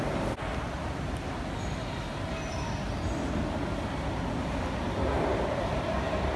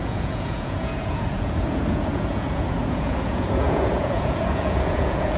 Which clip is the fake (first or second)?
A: second